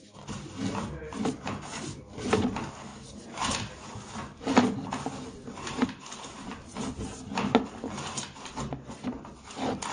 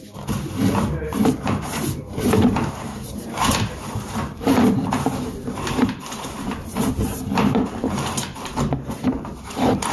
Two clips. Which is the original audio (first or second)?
first